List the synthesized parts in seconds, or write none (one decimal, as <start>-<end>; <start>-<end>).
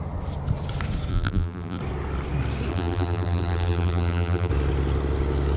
1.1-1.8; 2.7-4.5